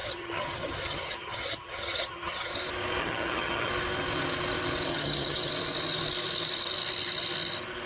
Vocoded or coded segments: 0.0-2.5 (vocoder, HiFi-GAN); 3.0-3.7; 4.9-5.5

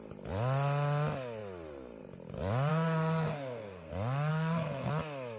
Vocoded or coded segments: 2.7-3.9 (codec, SNAC); 4.3-4.9

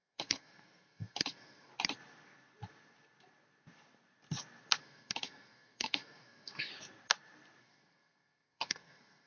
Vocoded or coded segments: 0.0-1.7 (codec, SNAC); 4.8-6.7; 7.6-9.3

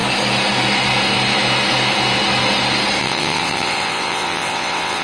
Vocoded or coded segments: 3.0-5.0 (vocoder, WaveNeXt)

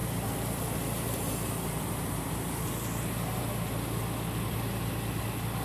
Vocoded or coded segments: none

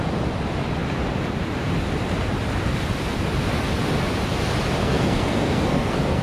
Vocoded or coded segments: 4.8-6.2 (codec, SNAC)